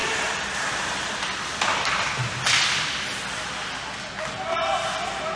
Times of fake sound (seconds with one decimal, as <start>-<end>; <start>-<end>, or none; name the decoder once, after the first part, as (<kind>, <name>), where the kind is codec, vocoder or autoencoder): 0.0-0.6 (vocoder, BigVGAN v2)